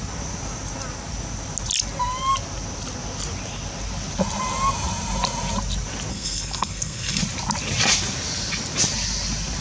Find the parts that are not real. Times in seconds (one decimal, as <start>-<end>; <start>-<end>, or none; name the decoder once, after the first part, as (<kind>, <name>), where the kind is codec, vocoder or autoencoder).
6.1-7.2 (codec, SNAC)